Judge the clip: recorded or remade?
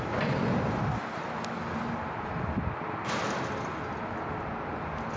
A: recorded